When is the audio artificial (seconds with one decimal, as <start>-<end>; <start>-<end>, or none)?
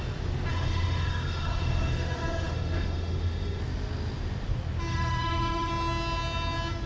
0.5-3.6; 4.9-5.7